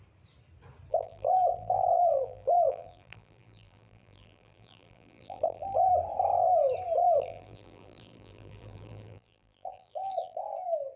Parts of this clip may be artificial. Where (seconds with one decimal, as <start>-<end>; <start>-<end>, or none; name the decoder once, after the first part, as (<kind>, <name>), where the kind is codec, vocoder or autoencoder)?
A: 0.9-5.9 (vocoder, BigVGAN v2); 7.0-10.4